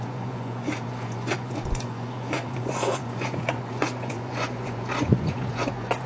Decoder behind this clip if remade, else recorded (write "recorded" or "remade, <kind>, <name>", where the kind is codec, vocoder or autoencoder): remade, vocoder, Vocos